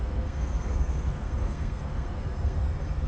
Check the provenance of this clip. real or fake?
fake